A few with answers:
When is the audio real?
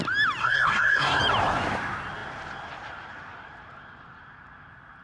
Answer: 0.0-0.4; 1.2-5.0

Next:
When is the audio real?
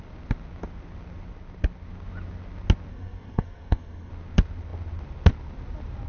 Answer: 0.0-2.9; 4.1-6.1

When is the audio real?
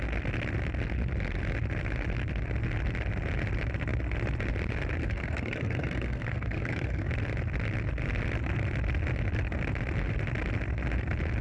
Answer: 0.0-5.0; 7.1-11.4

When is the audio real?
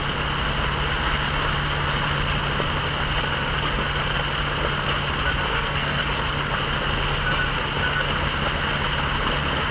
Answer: 0.0-5.5; 6.0-9.7